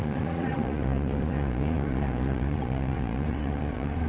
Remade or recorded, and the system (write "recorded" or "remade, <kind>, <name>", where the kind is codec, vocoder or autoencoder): remade, vocoder, Vocos